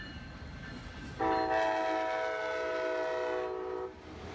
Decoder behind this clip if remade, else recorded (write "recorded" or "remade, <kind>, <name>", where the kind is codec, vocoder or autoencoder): recorded